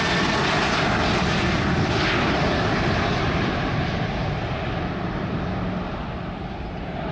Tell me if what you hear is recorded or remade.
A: recorded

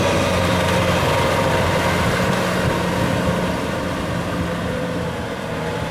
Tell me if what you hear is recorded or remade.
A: recorded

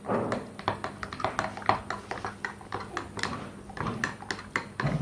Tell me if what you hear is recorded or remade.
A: recorded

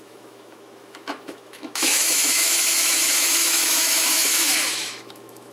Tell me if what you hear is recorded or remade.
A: remade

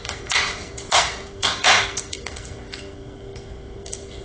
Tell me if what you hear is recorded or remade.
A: remade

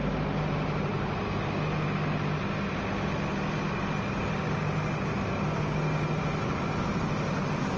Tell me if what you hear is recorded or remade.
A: recorded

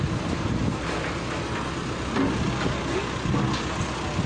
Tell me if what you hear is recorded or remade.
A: recorded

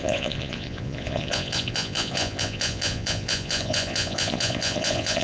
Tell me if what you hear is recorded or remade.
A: remade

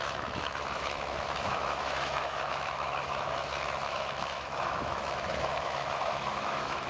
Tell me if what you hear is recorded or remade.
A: remade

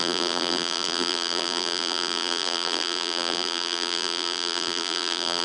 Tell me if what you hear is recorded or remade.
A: remade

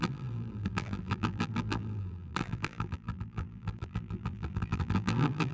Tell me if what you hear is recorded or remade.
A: remade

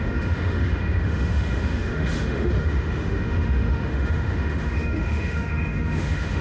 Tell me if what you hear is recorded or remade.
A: remade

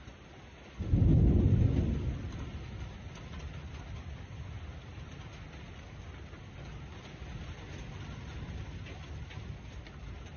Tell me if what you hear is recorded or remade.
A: recorded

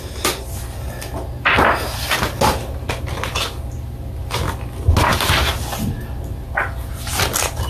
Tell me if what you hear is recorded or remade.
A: recorded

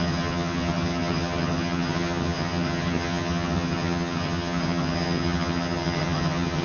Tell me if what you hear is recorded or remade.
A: remade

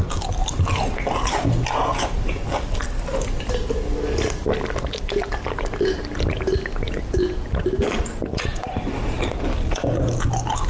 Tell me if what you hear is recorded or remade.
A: recorded